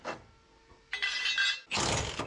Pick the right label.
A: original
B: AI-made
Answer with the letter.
A